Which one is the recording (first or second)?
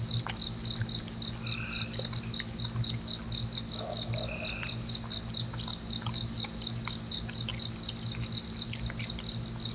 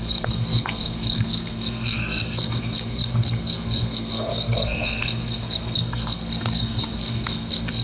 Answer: first